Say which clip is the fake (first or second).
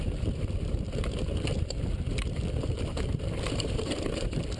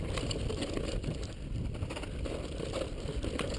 first